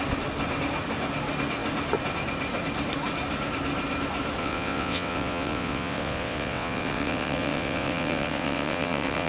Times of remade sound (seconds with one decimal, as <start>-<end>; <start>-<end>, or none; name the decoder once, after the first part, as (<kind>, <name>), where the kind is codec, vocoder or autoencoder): 4.4-9.3 (vocoder, WaveNeXt)